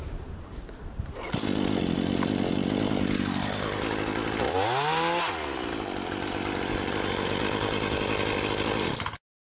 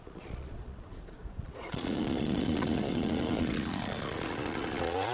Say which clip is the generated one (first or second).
second